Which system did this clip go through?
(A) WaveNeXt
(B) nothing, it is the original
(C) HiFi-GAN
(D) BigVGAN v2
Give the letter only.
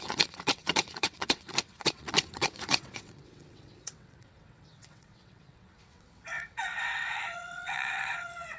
A